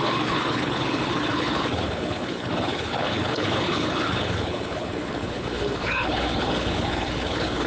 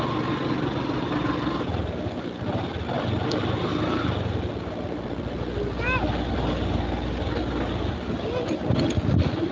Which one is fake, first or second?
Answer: first